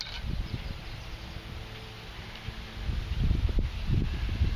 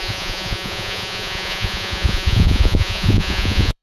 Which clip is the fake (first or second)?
second